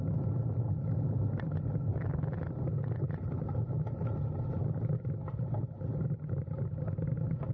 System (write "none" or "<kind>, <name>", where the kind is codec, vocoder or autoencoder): none